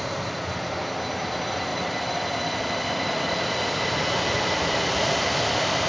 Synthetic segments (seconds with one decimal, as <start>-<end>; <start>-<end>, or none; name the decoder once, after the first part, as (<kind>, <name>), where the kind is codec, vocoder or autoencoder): 1.7-3.7 (vocoder, BigVGAN v2)